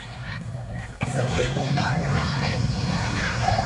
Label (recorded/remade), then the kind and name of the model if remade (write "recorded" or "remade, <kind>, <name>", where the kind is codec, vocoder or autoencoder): remade, codec, SNAC